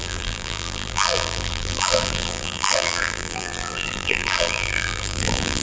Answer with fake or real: fake